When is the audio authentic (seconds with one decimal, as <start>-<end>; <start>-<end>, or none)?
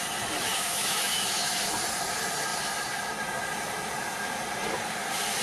0.0-0.5; 1.6-5.4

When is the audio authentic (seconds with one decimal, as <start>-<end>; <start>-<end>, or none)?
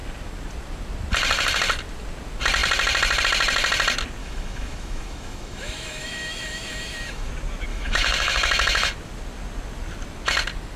0.0-4.2; 7.3-7.7; 8.9-10.8